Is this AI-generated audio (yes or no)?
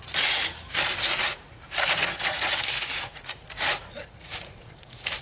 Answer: yes